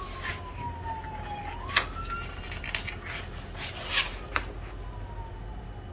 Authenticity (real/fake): real